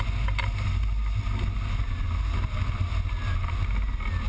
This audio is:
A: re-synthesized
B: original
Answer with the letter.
B